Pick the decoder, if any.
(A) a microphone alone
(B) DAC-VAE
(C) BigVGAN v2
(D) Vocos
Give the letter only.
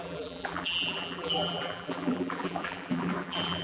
C